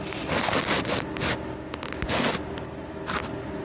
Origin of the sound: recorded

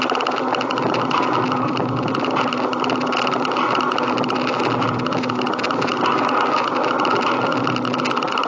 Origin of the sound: recorded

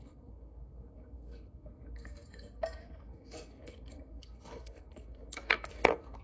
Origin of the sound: remade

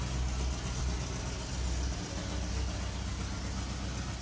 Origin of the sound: recorded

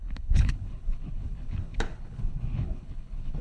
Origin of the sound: remade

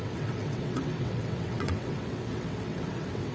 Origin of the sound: remade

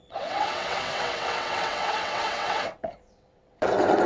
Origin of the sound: remade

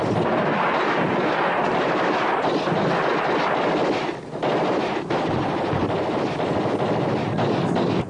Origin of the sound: recorded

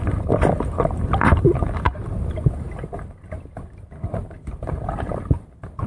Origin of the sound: recorded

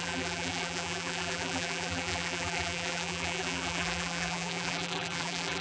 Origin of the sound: remade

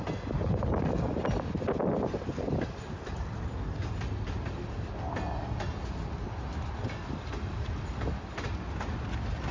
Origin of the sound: recorded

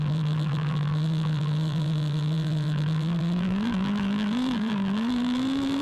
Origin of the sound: remade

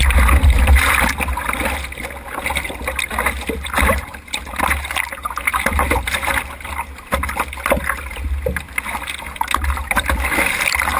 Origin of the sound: recorded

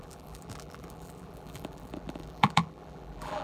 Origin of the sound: remade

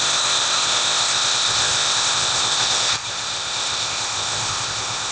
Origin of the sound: remade